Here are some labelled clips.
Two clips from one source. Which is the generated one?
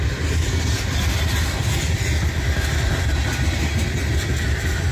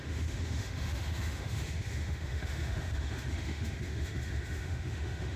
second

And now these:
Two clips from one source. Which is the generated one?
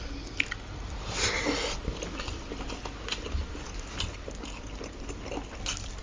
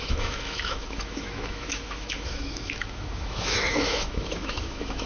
second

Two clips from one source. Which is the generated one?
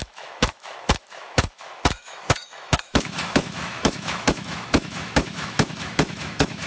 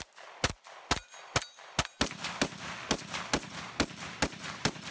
first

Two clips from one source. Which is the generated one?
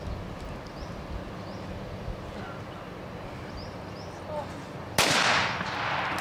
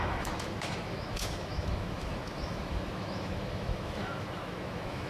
second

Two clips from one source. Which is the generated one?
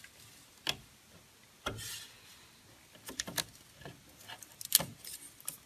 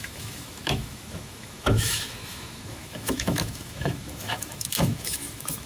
second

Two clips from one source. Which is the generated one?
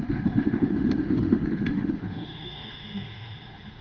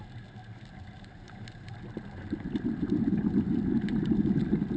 first